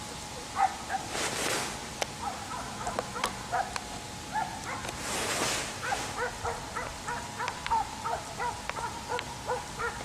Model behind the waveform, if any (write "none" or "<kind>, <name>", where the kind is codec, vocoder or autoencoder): none